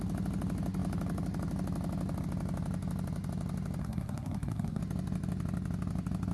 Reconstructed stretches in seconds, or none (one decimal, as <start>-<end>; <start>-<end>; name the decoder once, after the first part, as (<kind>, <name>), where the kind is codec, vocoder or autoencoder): 3.8-4.8 (codec, SNAC)